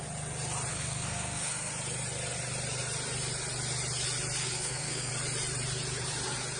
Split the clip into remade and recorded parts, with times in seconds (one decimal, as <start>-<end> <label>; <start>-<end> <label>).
0.0-0.7 recorded; 0.7-1.7 remade; 1.7-4.4 recorded; 4.4-5.1 remade; 5.1-6.6 recorded